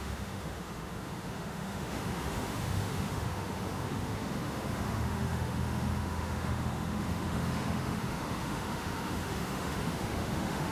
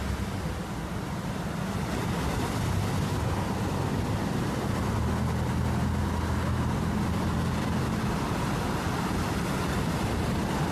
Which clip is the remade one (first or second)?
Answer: first